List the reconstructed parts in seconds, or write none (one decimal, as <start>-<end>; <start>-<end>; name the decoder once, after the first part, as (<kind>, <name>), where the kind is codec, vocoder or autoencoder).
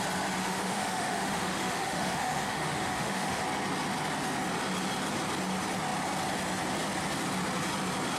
0.4-3.4 (autoencoder, DAC-VAE)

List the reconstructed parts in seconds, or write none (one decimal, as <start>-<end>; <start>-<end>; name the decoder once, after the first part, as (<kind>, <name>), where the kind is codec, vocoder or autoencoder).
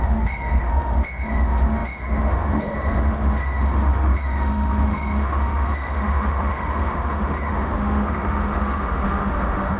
0.0-9.8 (autoencoder, DAC-VAE)